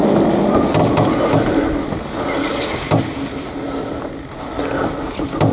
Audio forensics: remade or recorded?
recorded